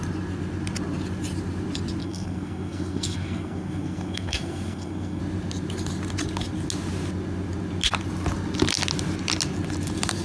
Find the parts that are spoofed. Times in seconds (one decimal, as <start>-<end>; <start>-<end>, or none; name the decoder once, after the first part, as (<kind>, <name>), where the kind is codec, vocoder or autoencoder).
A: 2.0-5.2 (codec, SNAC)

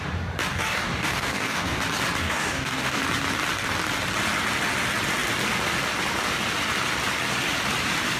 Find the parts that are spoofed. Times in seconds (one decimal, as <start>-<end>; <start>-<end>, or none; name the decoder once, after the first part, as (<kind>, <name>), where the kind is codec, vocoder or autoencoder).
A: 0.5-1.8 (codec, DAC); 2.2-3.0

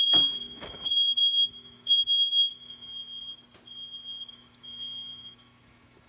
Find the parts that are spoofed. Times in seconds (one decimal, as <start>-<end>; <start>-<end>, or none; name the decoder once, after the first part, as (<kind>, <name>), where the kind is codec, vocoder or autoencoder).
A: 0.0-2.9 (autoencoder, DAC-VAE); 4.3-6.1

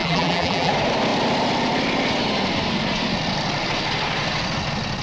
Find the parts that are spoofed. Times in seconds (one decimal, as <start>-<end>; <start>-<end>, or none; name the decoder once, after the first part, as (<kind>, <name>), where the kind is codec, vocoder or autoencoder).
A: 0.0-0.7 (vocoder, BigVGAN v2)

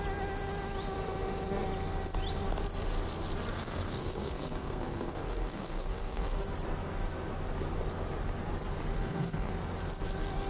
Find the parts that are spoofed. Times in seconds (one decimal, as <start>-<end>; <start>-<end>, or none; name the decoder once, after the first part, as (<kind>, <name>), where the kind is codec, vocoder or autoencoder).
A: 3.5-6.4 (codec, SNAC); 9.0-9.5

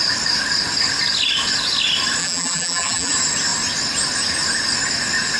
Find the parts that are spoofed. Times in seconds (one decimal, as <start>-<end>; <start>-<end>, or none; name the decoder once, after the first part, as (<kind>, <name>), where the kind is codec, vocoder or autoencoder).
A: 2.2-3.1 (vocoder, BigVGAN v2)